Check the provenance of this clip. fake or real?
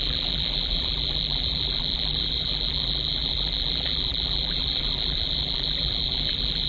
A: fake